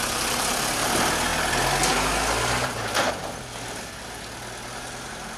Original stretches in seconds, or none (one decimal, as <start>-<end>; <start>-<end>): 0.0-5.4